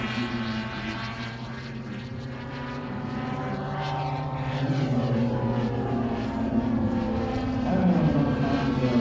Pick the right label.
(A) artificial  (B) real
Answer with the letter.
A